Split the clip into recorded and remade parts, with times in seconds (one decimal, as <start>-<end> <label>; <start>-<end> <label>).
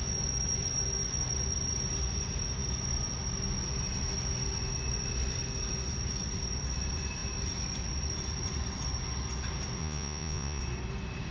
0.0-9.8 recorded; 9.8-10.6 remade; 10.6-11.3 recorded